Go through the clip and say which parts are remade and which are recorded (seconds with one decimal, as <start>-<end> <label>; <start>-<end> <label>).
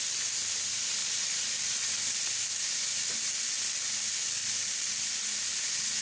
0.0-1.0 recorded; 1.0-1.9 remade; 1.9-4.4 recorded; 4.4-5.0 remade; 5.0-6.0 recorded